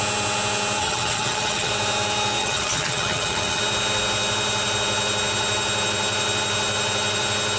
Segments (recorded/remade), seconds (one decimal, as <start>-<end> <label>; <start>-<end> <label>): 0.0-0.8 recorded; 0.8-1.7 remade; 1.7-2.4 recorded; 2.4-3.6 remade; 3.6-7.6 recorded